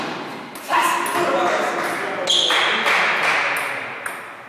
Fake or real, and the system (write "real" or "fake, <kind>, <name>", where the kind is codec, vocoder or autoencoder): real